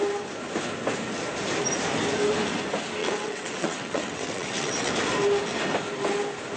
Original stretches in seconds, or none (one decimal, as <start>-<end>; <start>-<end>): 0.0-3.0; 4.9-6.6